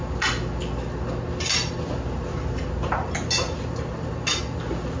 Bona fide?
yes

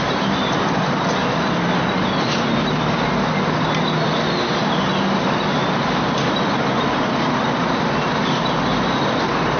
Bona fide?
yes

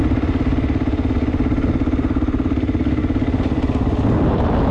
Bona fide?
yes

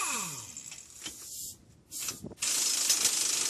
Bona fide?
yes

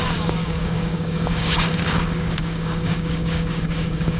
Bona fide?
no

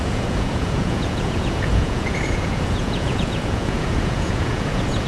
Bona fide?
no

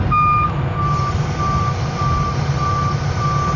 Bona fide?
yes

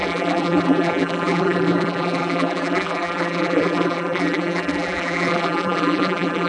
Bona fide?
no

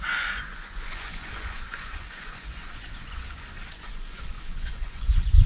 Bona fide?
no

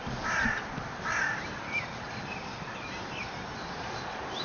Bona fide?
no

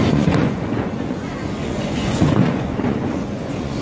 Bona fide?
no